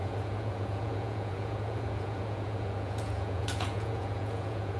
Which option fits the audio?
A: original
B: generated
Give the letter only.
B